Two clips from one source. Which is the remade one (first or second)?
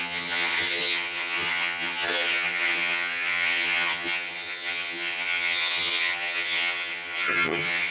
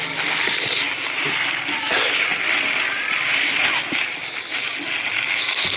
first